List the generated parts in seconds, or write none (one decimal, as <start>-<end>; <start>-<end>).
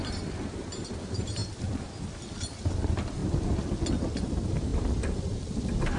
0.0-3.2; 4.2-6.0